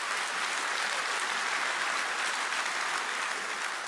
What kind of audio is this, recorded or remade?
recorded